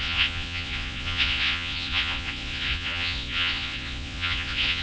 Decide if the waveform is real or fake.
fake